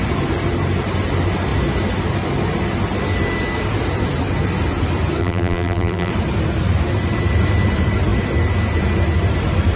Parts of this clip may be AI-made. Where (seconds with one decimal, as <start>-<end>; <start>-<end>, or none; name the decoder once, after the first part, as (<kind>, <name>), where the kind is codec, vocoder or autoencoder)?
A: 5.2-6.1 (vocoder, BigVGAN v2)